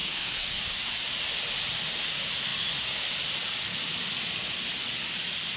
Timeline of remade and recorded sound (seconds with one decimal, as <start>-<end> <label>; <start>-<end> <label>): 0.0-0.6 remade; 0.6-5.6 recorded